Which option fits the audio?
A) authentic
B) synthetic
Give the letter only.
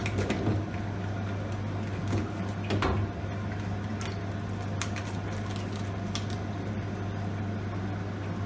A